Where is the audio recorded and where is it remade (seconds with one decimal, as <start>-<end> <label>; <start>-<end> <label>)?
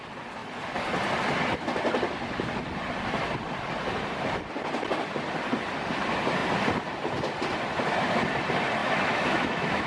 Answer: 0.0-8.8 recorded; 8.8-9.9 remade